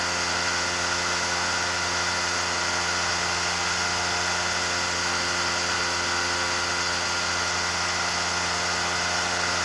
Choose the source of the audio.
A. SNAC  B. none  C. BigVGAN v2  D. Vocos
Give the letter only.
B